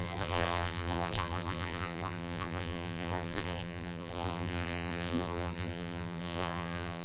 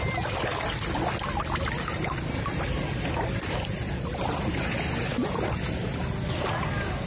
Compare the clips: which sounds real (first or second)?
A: second